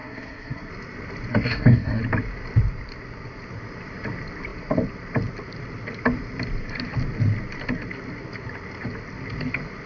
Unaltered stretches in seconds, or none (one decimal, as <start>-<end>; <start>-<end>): 0.7-1.3; 2.0-9.9